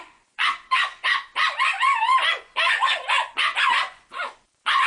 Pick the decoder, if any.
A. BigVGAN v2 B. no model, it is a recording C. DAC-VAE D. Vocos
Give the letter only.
D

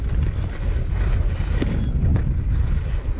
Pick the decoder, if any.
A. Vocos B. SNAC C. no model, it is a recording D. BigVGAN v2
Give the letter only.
C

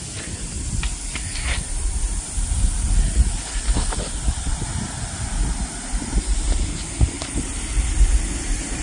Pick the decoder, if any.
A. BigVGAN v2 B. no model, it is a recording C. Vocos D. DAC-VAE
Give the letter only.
B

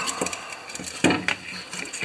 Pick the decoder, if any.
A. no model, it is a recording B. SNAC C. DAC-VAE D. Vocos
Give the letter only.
A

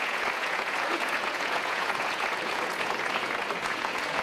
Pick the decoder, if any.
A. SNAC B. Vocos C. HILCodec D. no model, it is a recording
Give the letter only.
B